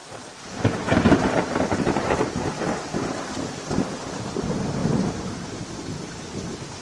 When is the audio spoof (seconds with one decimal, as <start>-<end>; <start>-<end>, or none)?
0.0-4.1; 4.8-5.6